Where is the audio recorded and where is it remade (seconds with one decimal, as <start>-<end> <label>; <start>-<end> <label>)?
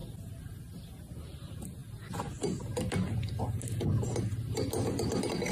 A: 0.0-5.5 recorded